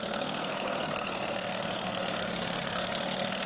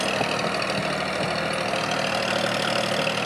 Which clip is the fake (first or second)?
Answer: first